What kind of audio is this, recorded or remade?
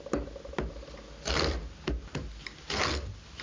recorded